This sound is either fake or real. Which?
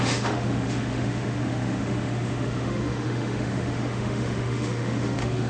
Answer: fake